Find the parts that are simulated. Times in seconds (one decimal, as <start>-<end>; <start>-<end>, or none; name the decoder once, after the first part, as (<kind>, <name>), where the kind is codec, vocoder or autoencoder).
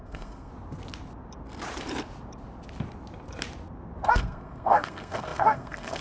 0.0-0.5 (codec, SNAC); 4.1-6.0